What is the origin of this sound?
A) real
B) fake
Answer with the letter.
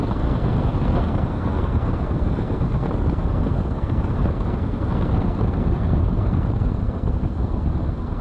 B